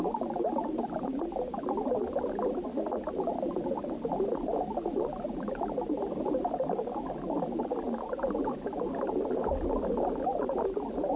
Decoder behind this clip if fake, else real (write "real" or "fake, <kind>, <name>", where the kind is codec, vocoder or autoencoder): real